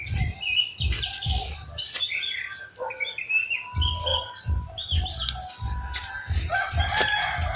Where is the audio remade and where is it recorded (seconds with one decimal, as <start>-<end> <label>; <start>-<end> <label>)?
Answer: 0.0-7.6 recorded